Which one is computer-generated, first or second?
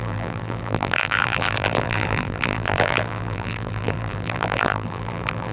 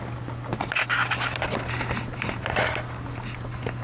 first